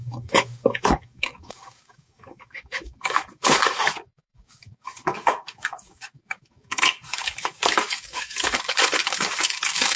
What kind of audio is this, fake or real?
fake